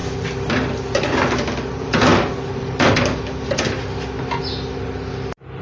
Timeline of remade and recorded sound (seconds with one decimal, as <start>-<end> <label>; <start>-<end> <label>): 0.0-1.7 recorded; 1.7-2.1 remade; 2.1-5.6 recorded